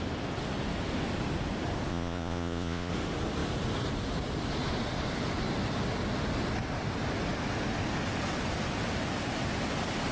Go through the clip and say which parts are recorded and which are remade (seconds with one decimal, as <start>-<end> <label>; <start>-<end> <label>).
0.0-1.9 recorded; 1.9-2.9 remade; 2.9-10.1 recorded